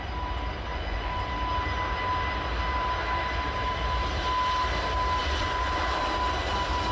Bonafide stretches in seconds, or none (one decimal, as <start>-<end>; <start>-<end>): 0.0-0.7; 1.2-5.2; 6.0-6.9